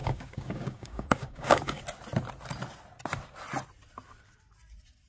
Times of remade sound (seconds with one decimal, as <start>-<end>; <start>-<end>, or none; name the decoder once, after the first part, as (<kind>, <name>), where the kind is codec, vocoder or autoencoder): 0.0-1.8 (codec, DAC)